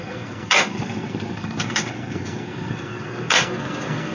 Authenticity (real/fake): fake